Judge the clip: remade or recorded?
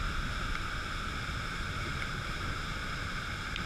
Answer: recorded